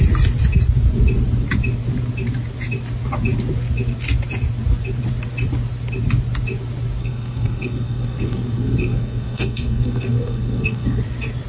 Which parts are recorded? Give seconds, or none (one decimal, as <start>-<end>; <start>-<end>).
0.0-7.0; 11.0-11.5